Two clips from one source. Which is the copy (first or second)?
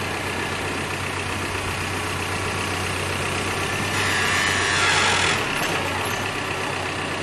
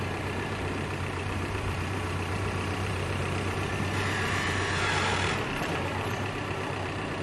second